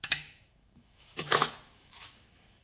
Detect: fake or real fake